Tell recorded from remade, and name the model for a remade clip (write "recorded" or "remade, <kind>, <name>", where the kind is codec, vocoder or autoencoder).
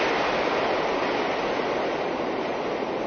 recorded